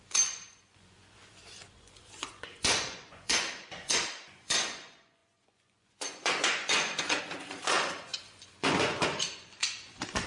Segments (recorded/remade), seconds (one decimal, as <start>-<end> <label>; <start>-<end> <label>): 0.0-10.3 remade